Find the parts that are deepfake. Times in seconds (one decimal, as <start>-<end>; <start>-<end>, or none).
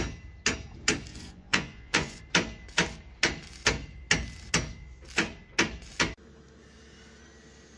1.1-2.2